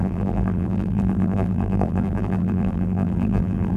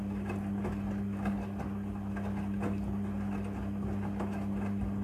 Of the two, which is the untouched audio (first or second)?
second